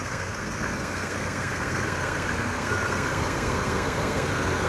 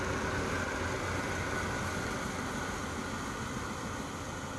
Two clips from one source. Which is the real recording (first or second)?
second